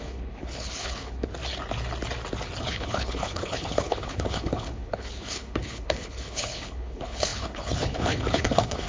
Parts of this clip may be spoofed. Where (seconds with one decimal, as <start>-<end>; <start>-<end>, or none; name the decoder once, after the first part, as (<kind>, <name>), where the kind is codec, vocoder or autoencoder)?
0.0-1.3 (codec, HILCodec); 2.6-8.9